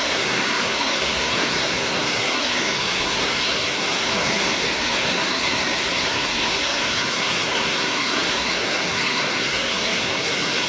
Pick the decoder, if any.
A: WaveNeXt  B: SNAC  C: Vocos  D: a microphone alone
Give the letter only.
B